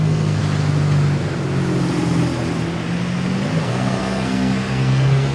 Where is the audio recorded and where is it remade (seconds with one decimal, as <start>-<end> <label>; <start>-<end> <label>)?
0.0-0.4 remade; 0.4-3.6 recorded; 3.6-5.3 remade